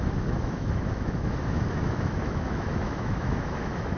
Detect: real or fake fake